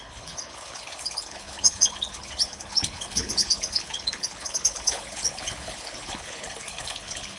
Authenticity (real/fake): fake